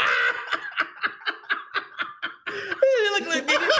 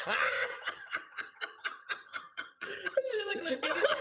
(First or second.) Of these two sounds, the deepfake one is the second